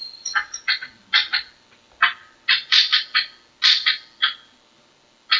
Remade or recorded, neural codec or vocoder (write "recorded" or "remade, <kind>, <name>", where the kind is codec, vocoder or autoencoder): recorded